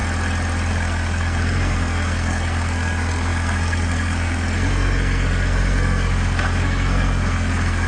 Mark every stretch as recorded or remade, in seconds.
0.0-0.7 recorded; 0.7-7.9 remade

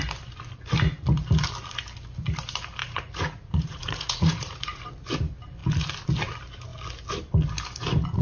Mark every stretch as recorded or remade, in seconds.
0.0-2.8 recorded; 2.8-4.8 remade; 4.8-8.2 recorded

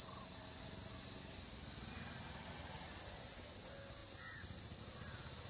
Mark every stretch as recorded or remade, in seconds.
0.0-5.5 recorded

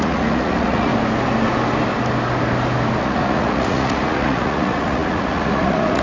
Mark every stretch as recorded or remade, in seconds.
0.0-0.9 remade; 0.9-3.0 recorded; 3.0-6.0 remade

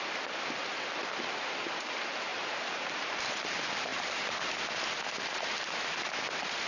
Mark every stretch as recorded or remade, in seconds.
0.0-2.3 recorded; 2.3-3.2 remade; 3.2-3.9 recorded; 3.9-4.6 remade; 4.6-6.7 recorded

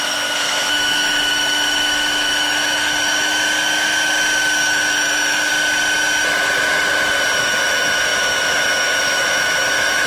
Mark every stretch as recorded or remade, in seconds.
0.0-5.5 remade; 5.5-7.4 recorded; 7.4-10.1 remade